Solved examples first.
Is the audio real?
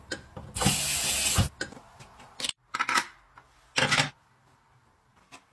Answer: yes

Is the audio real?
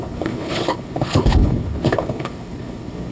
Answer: no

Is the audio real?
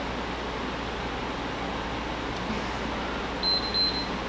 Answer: yes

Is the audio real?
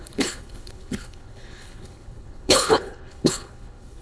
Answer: no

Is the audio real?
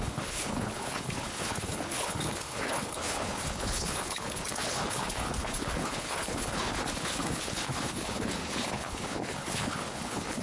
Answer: no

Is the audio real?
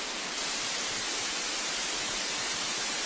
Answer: yes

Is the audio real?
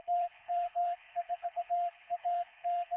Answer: no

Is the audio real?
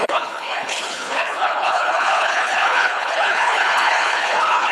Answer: no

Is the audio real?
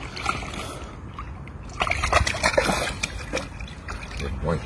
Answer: yes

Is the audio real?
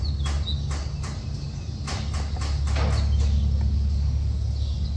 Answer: yes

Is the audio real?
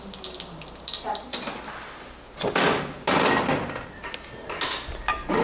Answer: yes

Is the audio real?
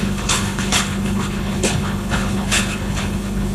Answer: no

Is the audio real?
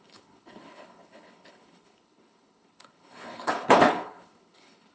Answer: no